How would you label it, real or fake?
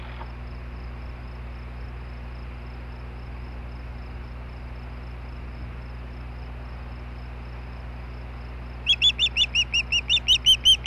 real